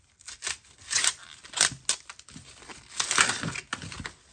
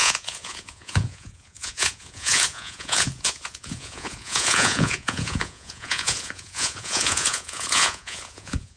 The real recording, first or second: first